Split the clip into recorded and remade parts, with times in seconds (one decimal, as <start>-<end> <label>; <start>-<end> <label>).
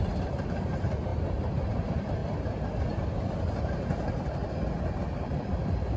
0.0-1.1 remade; 1.1-1.7 recorded; 1.7-2.2 remade; 2.2-3.2 recorded; 3.2-4.4 remade; 4.4-5.0 recorded; 5.0-6.0 remade